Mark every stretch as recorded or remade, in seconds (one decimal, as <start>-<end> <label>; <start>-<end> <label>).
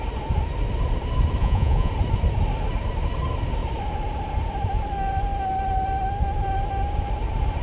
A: 0.0-1.4 recorded; 1.4-1.9 remade; 1.9-7.6 recorded